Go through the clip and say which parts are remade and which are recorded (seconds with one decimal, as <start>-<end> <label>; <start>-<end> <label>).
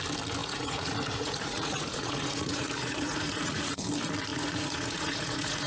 0.0-0.4 recorded; 0.4-3.8 remade; 3.8-4.3 recorded; 4.3-5.7 remade